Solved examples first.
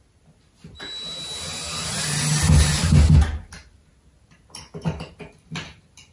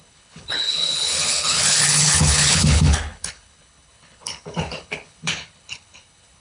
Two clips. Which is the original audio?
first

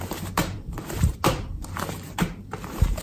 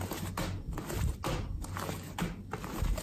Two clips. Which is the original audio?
second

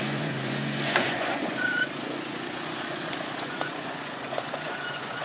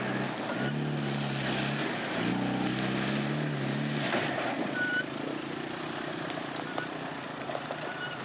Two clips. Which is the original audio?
second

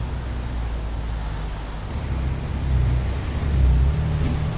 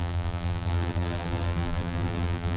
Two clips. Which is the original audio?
first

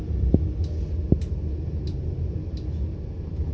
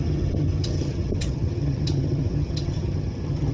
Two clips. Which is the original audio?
first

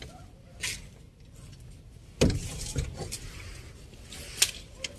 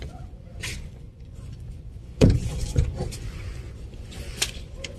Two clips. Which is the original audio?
first